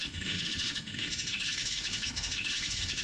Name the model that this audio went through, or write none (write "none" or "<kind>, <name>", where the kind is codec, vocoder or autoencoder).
autoencoder, DAC-VAE